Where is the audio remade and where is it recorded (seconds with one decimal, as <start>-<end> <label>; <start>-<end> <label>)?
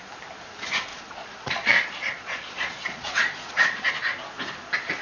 0.0-0.9 recorded; 0.9-3.9 remade; 3.9-5.0 recorded